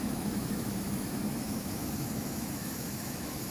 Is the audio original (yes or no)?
no